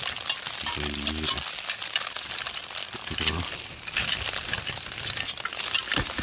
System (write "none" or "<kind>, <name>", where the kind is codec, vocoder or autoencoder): none